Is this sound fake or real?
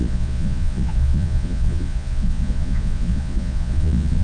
fake